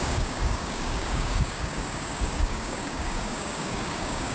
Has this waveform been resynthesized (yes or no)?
yes